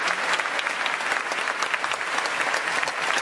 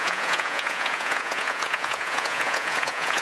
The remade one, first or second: second